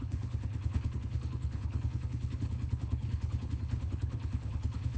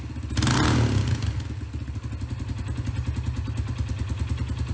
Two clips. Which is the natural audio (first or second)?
second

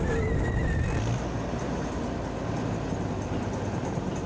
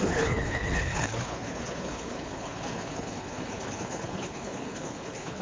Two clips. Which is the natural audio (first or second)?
first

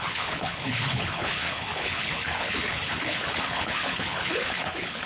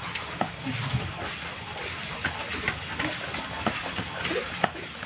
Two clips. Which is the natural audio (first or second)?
second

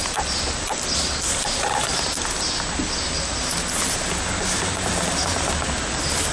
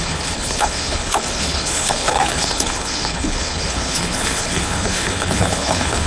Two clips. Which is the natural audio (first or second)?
first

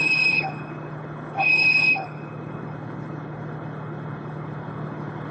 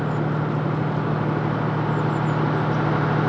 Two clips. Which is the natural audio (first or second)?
second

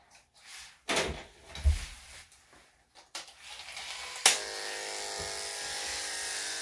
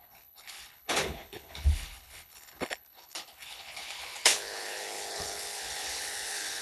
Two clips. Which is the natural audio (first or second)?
first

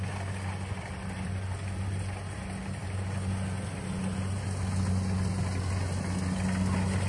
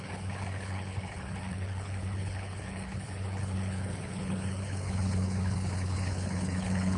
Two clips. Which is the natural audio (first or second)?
first